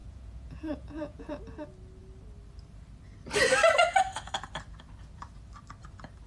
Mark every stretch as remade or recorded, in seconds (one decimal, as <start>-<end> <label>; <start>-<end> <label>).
0.0-1.4 remade; 1.4-6.3 recorded